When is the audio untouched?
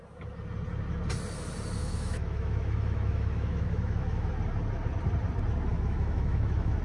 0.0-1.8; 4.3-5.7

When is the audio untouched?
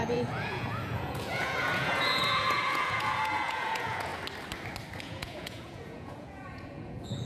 4.1-5.0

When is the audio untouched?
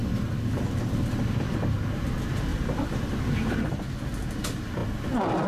1.0-2.5; 3.5-5.5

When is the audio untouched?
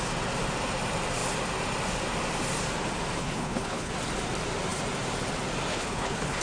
0.0-3.2; 3.9-5.7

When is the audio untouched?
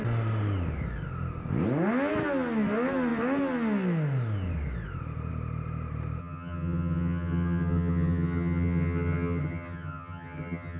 0.0-6.2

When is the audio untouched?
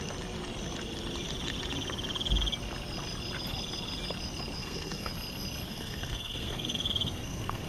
0.0-4.6; 5.1-5.7